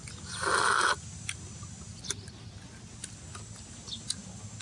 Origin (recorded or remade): recorded